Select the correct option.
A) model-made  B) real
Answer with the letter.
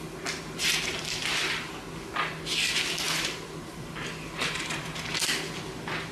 B